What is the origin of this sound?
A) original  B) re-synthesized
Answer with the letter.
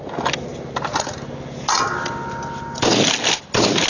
A